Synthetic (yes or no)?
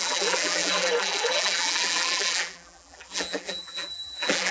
yes